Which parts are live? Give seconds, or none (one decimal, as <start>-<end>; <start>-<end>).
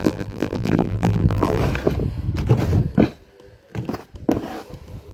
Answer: 1.6-5.1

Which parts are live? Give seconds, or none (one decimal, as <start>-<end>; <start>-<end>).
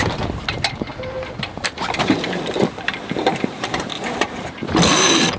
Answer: 0.0-1.5; 4.7-5.4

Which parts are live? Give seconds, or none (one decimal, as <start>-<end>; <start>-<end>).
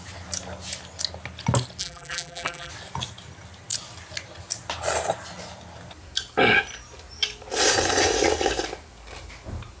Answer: 0.0-1.8; 2.7-9.8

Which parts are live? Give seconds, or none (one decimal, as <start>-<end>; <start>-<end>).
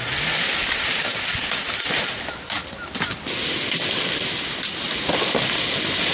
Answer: 0.0-6.1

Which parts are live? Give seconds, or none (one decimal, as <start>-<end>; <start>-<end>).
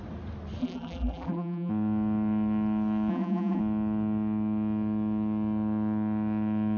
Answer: 0.0-0.6; 1.7-3.1; 3.6-6.8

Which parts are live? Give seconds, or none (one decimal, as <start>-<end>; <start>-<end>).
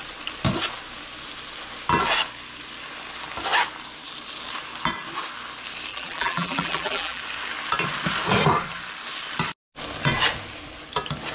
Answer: 0.0-5.9; 7.2-11.3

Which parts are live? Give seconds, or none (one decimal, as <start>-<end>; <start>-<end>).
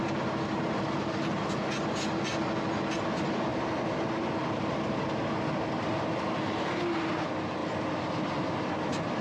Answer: 0.0-3.5; 5.3-7.6; 8.7-9.2